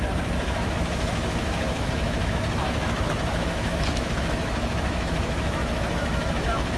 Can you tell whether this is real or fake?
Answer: fake